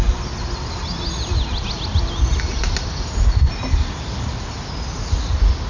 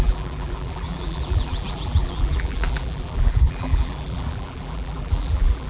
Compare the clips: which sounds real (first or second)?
first